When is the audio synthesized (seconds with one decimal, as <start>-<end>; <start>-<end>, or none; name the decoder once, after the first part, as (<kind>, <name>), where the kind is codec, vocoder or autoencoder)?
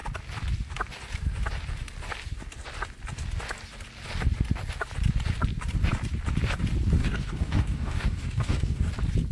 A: 7.0-8.9 (codec, DAC)